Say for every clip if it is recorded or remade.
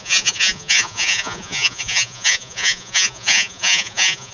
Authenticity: remade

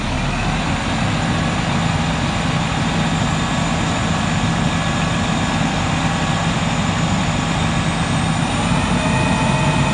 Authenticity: recorded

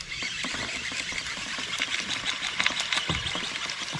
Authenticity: recorded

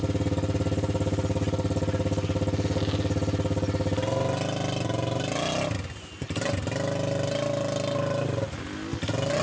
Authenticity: recorded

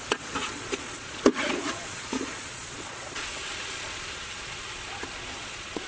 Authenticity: remade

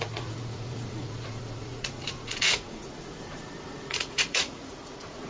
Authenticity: remade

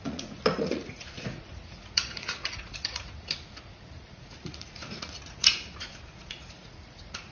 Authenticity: remade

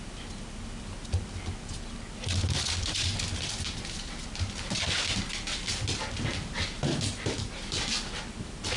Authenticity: recorded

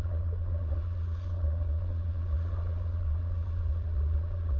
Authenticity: remade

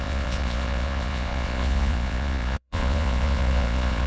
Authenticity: remade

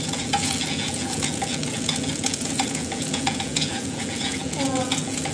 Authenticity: remade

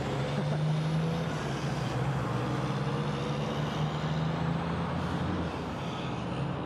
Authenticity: recorded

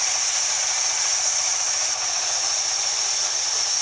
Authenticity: remade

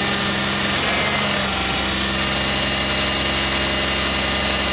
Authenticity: recorded